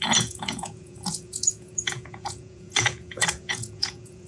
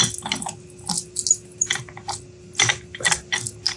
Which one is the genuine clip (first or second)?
second